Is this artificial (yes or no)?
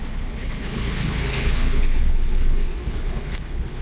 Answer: yes